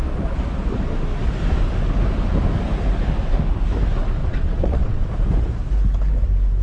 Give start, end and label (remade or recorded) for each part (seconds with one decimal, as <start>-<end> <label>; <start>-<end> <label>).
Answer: 0.0-4.2 recorded; 4.2-5.1 remade; 5.1-6.6 recorded